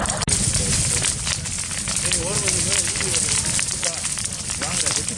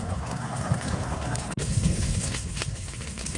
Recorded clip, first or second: first